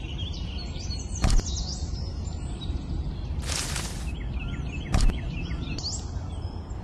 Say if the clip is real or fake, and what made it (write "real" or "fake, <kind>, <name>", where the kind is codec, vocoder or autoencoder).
real